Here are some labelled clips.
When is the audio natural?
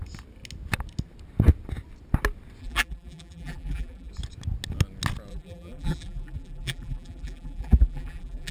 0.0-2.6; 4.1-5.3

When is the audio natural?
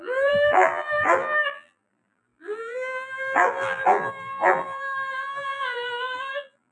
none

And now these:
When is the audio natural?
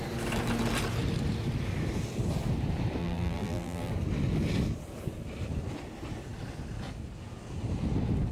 0.0-3.0; 3.9-8.3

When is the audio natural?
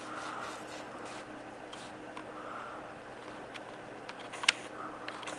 0.0-5.4